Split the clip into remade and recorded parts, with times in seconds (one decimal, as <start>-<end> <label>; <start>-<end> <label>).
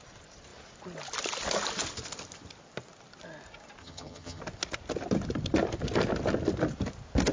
0.0-3.8 recorded; 3.8-4.4 remade; 4.4-7.3 recorded